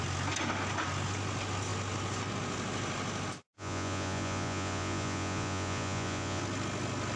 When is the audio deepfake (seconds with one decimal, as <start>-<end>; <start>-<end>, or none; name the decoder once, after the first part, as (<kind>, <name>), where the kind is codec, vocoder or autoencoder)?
3.5-6.4 (vocoder, Vocos)